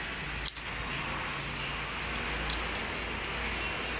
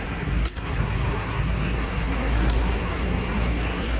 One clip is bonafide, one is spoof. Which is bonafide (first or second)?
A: first